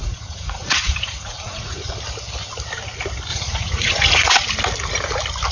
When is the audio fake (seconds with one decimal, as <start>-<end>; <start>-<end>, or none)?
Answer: 0.0-1.9; 3.3-4.3